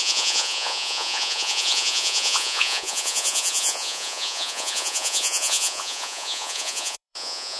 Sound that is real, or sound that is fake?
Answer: fake